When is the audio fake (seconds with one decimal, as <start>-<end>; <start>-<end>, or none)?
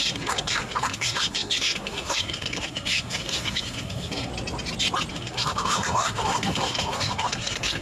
0.0-4.3; 5.1-7.8